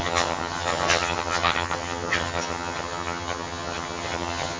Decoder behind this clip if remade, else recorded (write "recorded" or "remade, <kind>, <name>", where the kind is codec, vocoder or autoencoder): remade, vocoder, HiFi-GAN